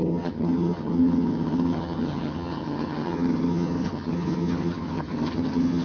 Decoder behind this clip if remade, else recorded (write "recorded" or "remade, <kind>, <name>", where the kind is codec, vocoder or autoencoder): remade, vocoder, HiFi-GAN